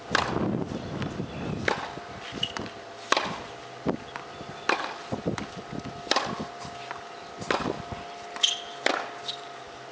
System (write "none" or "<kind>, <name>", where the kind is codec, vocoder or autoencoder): none